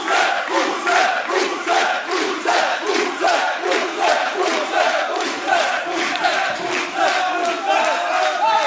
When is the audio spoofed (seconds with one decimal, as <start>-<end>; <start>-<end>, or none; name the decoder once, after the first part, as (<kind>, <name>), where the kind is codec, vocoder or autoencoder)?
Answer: 1.3-6.2 (vocoder, Vocos)